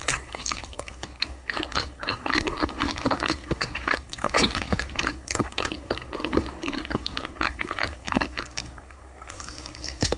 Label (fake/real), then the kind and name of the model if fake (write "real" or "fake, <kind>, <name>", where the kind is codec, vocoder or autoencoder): fake, codec, SNAC